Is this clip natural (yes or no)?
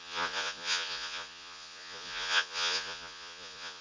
no